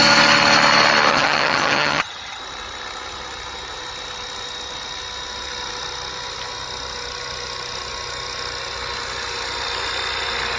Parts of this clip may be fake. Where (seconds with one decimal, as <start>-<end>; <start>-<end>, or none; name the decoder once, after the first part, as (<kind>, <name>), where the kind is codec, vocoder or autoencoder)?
1.1-2.4 (vocoder, HiFi-GAN)